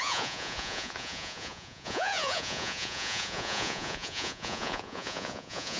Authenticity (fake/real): fake